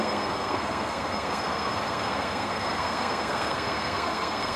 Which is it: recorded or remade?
remade